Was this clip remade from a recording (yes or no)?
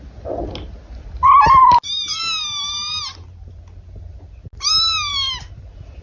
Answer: no